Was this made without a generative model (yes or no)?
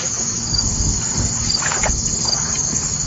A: no